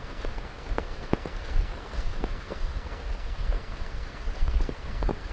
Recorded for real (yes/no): no